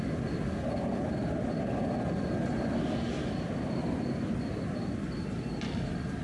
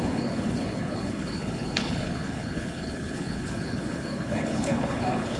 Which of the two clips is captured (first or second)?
first